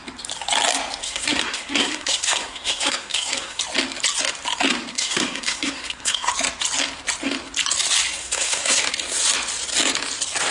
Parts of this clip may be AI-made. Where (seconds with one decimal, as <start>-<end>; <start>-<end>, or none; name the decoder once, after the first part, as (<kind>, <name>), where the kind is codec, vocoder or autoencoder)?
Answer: 1.0-3.6 (codec, SNAC); 4.9-6.3; 8.2-8.8